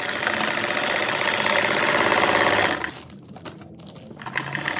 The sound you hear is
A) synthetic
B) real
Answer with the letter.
B